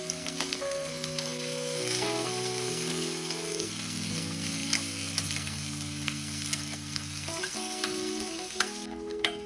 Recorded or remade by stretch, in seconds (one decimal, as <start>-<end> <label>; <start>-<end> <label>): 0.0-9.5 remade